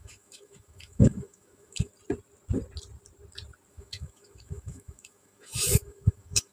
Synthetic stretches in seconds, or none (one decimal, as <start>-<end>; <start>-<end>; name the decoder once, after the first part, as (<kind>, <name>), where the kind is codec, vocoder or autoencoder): 0.0-1.9 (autoencoder, DAC-VAE); 3.7-6.5